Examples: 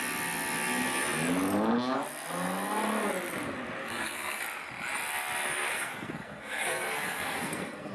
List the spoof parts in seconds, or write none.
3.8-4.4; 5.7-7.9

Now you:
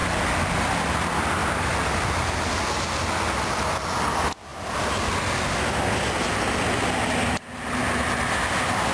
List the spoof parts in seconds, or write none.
none

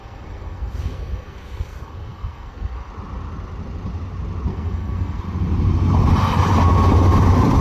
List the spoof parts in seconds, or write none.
0.0-2.9; 4.5-5.2

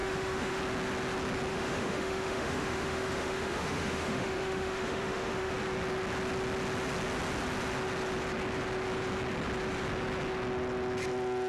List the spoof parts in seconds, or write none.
0.0-0.6; 1.5-5.5

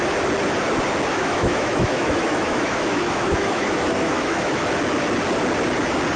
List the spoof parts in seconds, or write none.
1.1-4.6

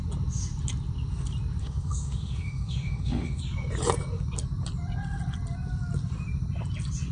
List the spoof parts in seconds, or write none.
1.6-3.4